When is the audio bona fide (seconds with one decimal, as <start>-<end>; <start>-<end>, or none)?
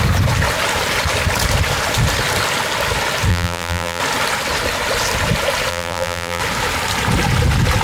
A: 0.0-3.3; 4.0-5.7; 6.4-7.8